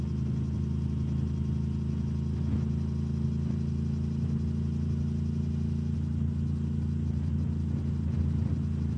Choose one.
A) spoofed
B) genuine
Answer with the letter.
B